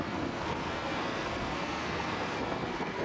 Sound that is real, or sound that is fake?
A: fake